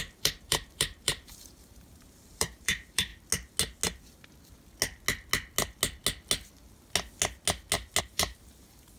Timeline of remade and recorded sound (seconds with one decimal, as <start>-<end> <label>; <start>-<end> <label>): 0.0-3.1 remade; 3.1-8.0 recorded; 8.0-9.0 remade